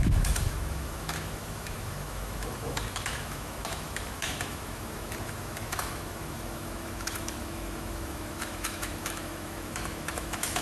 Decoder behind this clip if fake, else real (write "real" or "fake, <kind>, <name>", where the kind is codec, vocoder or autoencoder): fake, autoencoder, DAC-VAE